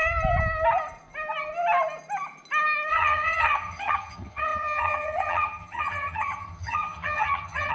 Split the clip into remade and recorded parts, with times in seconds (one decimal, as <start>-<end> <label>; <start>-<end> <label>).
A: 0.0-2.9 recorded; 2.9-7.7 remade